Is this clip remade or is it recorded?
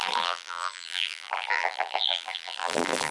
remade